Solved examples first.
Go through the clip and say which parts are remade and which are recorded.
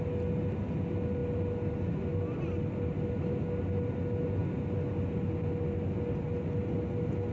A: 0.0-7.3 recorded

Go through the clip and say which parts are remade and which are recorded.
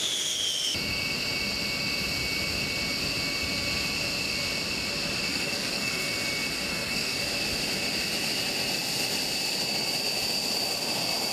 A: 0.0-5.3 recorded; 5.3-6.1 remade; 6.1-6.7 recorded; 6.7-7.2 remade; 7.2-11.3 recorded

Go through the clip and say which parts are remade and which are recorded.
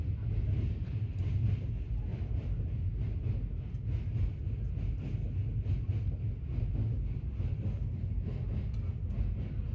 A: 0.0-9.7 recorded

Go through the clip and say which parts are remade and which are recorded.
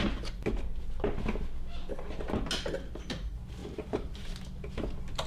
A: 0.0-3.6 recorded; 3.6-4.4 remade; 4.4-5.3 recorded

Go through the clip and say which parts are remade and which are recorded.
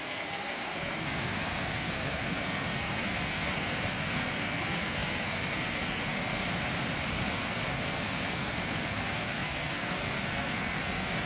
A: 0.0-6.4 remade; 6.4-7.3 recorded; 7.3-11.3 remade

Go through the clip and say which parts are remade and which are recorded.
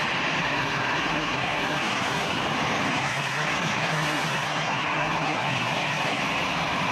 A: 0.0-0.4 recorded; 0.4-2.4 remade; 2.4-2.9 recorded; 2.9-6.2 remade; 6.2-6.9 recorded